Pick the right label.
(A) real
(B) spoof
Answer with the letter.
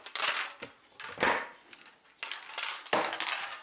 A